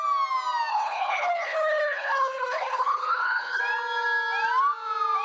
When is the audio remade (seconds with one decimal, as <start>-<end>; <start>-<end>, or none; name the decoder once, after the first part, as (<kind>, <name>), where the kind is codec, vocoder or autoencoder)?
0.7-3.6 (codec, HILCodec)